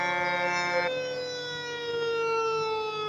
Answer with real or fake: real